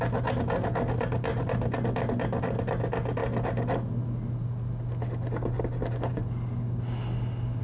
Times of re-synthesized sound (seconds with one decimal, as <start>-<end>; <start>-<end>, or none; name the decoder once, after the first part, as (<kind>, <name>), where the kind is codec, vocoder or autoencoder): none